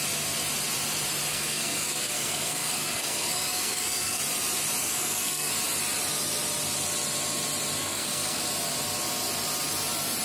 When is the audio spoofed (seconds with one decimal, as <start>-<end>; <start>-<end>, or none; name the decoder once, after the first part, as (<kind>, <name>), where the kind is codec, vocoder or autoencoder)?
1.3-4.2 (codec, SNAC); 4.8-5.5; 7.8-8.4